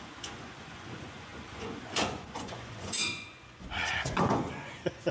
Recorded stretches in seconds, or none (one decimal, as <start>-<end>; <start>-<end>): none